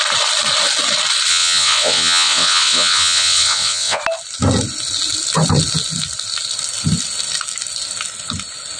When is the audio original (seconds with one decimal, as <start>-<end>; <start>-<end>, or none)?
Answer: 0.0-1.3; 4.0-8.8